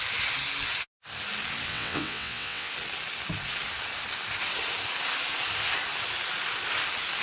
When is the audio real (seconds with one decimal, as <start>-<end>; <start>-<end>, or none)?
0.0-1.7; 2.7-7.2